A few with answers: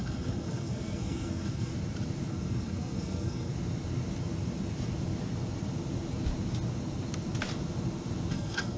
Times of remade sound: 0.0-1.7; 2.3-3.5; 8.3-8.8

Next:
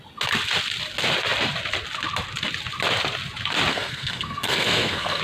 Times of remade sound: 3.7-5.2

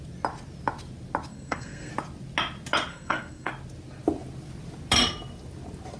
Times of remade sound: 1.3-1.9; 2.9-3.5

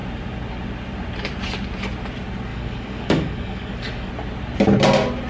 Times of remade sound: 2.5-4.1